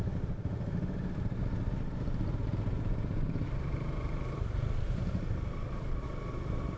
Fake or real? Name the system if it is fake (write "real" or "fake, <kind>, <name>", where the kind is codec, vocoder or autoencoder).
fake, vocoder, BigVGAN v2